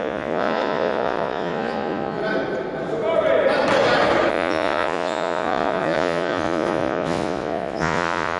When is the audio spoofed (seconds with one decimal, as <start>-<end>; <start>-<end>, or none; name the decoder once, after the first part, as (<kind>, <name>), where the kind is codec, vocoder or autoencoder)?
0.0-2.2 (vocoder, Vocos); 4.3-8.4